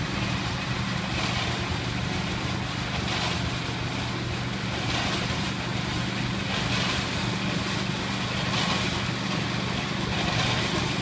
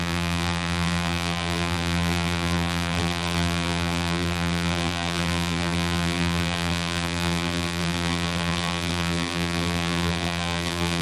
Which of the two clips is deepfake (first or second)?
second